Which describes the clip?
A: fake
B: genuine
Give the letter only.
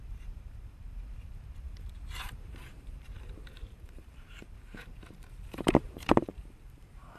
A